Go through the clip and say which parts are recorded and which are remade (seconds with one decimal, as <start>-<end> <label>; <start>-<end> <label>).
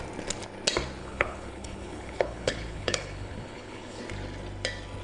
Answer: 0.0-1.0 recorded; 1.0-4.0 remade; 4.0-5.0 recorded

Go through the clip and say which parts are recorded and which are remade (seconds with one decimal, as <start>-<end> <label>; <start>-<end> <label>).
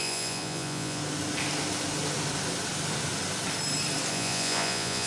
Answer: 0.0-1.0 remade; 1.0-4.1 recorded; 4.1-5.1 remade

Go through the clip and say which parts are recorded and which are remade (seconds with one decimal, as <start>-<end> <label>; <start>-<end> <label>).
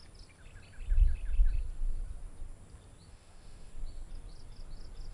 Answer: 0.0-3.1 recorded; 3.1-3.7 remade; 3.7-5.1 recorded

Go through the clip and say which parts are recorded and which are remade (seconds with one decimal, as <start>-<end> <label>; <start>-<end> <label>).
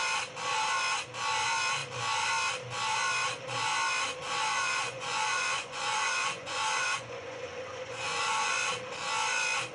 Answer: 0.0-4.5 recorded; 4.5-8.5 remade; 8.5-9.7 recorded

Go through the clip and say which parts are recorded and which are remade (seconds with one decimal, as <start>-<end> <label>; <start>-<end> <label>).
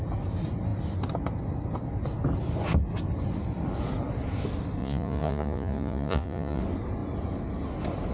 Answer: 0.0-4.8 recorded; 4.8-6.6 remade; 6.6-8.1 recorded